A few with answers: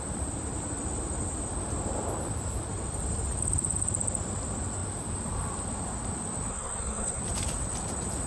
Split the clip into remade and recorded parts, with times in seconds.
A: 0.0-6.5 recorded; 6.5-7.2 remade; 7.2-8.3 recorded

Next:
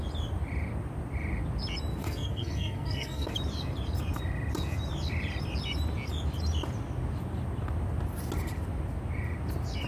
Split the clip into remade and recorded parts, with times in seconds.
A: 0.0-2.0 recorded; 2.0-3.3 remade; 3.3-9.9 recorded

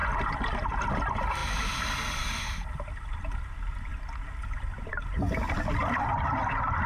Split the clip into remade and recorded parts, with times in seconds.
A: 0.0-6.9 recorded